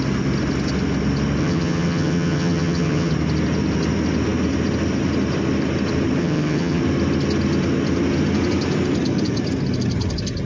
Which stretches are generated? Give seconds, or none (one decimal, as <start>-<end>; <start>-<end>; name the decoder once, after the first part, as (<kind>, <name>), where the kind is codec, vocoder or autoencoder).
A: 1.4-3.1 (vocoder, HiFi-GAN); 6.2-6.8